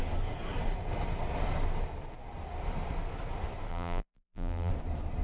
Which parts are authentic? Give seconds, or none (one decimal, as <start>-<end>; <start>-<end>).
0.0-3.7; 4.7-5.2